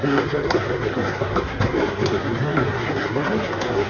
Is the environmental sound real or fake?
fake